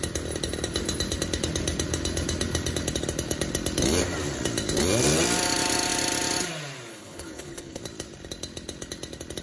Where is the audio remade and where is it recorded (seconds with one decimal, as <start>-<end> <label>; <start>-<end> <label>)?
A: 0.0-6.9 recorded; 6.9-7.8 remade; 7.8-9.4 recorded

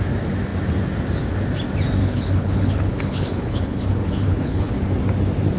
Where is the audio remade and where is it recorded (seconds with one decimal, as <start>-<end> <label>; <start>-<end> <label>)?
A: 0.0-2.0 recorded; 2.0-4.7 remade; 4.7-5.6 recorded

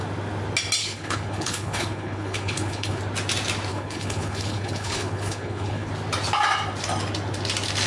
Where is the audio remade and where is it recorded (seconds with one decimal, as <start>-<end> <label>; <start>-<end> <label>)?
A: 0.0-0.8 recorded; 0.8-3.0 remade; 3.0-3.7 recorded; 3.7-5.9 remade; 5.9-7.9 recorded

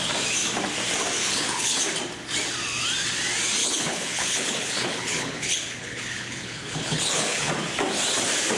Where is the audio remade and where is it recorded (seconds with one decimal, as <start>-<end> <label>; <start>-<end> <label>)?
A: 0.0-1.2 recorded; 1.2-1.8 remade; 1.8-3.6 recorded; 3.6-7.5 remade; 7.5-8.6 recorded